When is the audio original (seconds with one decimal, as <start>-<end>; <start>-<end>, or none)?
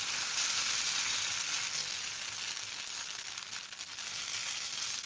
0.0-5.1